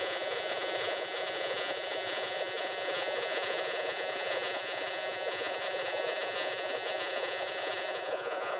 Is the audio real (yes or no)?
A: no